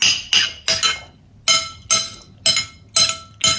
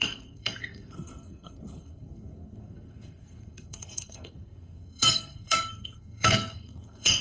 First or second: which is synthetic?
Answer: second